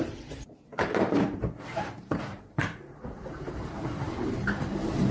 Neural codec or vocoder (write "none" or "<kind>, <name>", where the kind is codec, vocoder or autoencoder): vocoder, BigVGAN v2